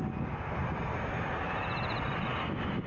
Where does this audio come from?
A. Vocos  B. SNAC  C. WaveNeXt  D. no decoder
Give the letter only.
D